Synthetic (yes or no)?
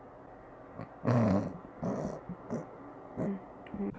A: no